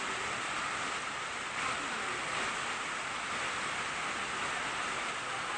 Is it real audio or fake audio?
real